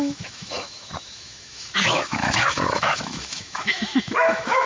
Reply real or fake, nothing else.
fake